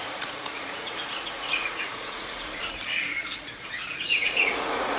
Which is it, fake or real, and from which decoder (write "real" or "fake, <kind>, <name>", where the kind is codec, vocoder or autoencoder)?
fake, vocoder, Vocos